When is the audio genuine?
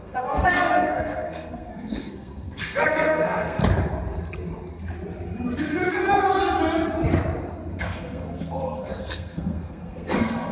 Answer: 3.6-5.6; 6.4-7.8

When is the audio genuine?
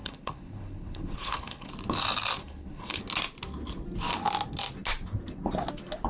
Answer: 1.7-2.4; 3.0-6.1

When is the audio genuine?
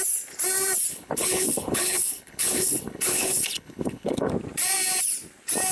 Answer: 0.0-0.9; 4.3-5.7